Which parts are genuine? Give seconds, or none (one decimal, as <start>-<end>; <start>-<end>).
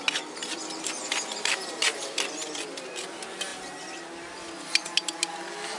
0.0-0.4; 2.9-3.5; 4.0-5.8